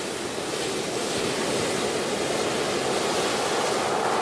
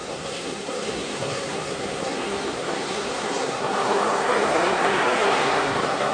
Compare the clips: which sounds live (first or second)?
first